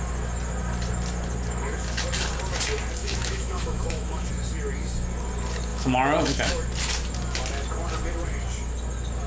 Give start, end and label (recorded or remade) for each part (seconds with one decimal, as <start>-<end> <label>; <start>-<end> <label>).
0.0-3.0 recorded; 3.0-4.3 remade; 4.3-5.7 recorded; 5.7-6.5 remade; 6.5-9.3 recorded